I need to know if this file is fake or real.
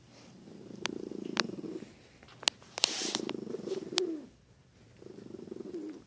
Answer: real